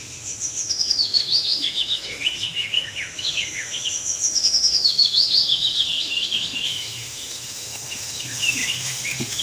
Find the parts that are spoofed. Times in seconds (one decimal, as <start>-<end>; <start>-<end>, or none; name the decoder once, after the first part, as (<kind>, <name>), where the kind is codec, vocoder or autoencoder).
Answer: 0.0-9.4 (autoencoder, DAC-VAE)